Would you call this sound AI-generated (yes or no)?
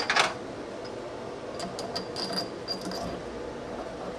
no